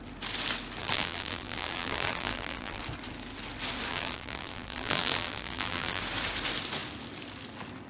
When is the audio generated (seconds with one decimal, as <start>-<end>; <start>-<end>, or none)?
0.8-2.8; 3.9-6.0